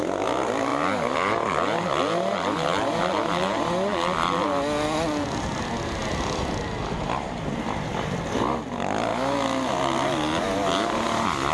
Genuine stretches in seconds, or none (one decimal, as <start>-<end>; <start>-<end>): 0.0-11.5